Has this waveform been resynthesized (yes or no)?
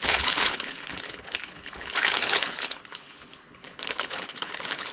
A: yes